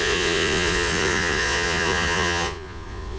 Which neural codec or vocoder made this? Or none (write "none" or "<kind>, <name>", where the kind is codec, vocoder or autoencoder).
vocoder, Vocos